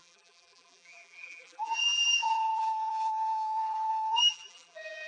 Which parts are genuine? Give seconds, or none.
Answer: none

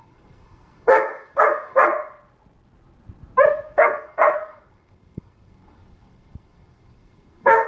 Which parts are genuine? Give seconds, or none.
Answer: 1.9-3.5

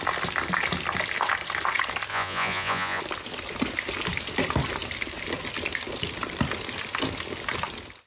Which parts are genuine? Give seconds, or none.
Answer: 0.0-2.1; 3.0-8.1

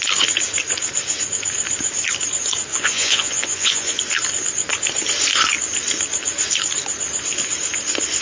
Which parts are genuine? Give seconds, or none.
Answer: 0.0-2.7; 4.0-8.2

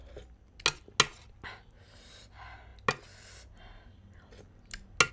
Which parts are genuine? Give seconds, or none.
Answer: 0.0-5.1

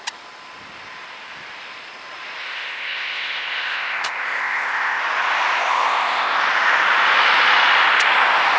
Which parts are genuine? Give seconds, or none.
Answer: 0.0-2.4; 5.0-5.6; 6.4-8.6